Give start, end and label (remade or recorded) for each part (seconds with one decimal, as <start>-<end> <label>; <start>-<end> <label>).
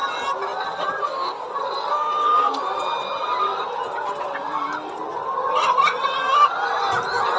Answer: 0.0-1.9 recorded; 1.9-2.6 remade; 2.6-7.4 recorded